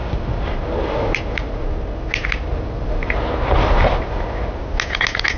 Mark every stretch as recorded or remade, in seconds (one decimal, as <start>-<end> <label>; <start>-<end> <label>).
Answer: 0.0-1.6 remade; 1.6-2.5 recorded; 2.5-4.6 remade; 4.6-5.4 recorded